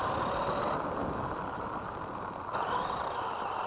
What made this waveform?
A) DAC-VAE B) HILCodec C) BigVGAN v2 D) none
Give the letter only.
D